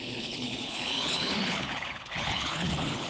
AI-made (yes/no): yes